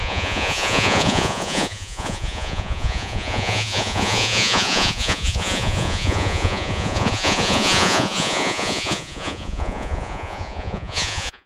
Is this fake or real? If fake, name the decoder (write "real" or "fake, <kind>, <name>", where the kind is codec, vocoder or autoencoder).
fake, vocoder, Vocos